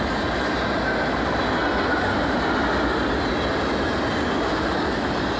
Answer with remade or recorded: recorded